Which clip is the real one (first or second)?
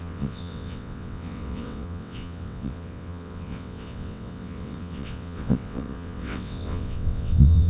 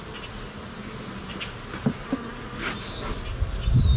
second